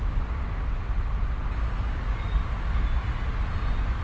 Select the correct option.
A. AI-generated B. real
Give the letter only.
B